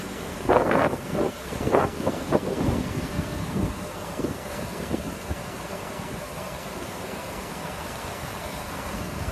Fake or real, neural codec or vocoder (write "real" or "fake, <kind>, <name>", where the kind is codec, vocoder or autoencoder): fake, codec, SNAC